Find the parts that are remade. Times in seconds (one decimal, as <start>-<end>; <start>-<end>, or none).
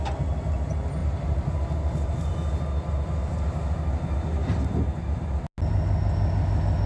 1.0-2.3